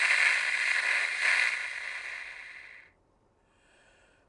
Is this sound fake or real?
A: real